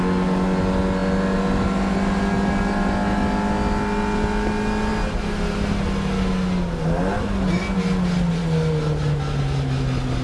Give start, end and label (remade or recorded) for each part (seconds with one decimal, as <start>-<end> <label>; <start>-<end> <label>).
0.0-10.2 recorded